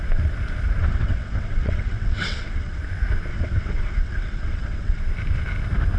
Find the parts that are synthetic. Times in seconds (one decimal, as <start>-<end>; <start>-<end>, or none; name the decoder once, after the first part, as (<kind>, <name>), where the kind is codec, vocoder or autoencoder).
0.8-2.8 (vocoder, WaveNeXt); 3.3-5.0